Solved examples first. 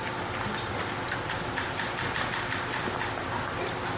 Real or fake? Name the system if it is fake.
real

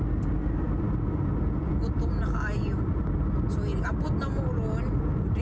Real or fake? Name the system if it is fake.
real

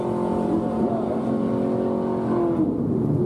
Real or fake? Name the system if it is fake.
real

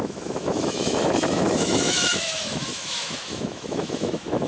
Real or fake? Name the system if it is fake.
fake, autoencoder, DAC-VAE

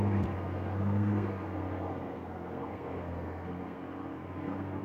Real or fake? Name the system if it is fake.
fake, codec, SNAC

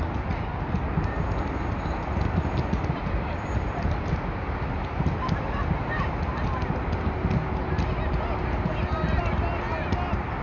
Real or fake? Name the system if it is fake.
real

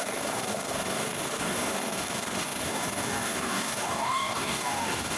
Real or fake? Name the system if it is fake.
fake, codec, DAC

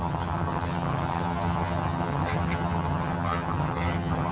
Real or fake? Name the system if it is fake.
fake, vocoder, HiFi-GAN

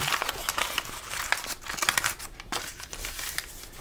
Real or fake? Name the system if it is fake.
real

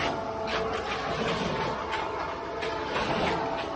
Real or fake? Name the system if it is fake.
real